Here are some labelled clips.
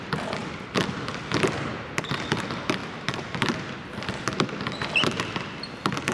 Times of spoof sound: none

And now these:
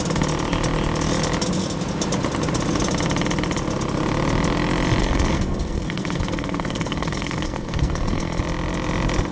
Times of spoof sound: 5.0-8.4 (codec, SNAC)

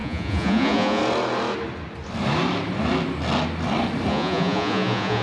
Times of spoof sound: 0.0-1.0 (vocoder, Vocos); 4.1-5.2